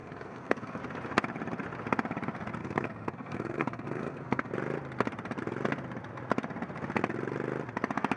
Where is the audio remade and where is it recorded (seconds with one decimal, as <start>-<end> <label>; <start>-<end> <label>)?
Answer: 0.0-0.8 remade; 0.8-2.6 recorded; 2.6-4.5 remade; 4.5-8.2 recorded